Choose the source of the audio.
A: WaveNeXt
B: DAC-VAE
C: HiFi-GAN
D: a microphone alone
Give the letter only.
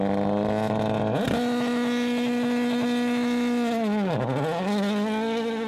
D